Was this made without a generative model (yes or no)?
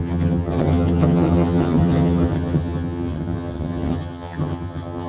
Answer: no